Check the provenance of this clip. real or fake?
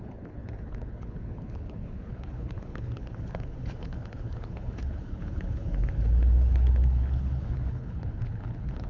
fake